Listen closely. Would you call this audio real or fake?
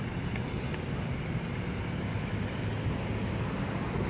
real